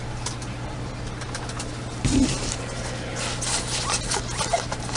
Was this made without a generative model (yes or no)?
yes